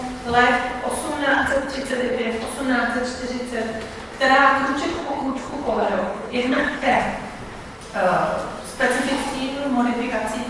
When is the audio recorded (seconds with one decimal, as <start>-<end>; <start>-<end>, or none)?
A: 0.0-1.3; 2.3-4.9; 7.0-10.5